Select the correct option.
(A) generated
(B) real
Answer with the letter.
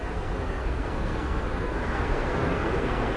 A